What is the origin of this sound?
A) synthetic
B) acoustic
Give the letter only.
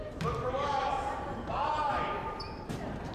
A